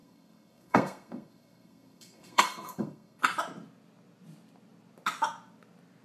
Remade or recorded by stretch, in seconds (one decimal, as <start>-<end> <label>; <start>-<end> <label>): 0.0-3.2 remade; 3.2-6.0 recorded

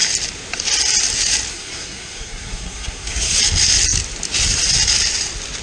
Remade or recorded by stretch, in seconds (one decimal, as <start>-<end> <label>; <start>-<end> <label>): 0.0-1.5 recorded; 1.5-3.4 remade; 3.4-5.6 recorded